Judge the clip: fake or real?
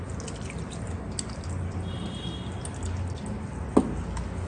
real